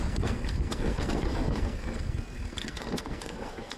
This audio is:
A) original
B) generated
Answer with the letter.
B